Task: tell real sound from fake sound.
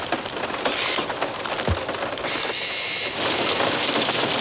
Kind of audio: real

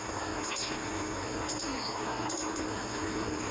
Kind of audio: fake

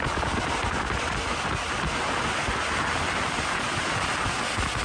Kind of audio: real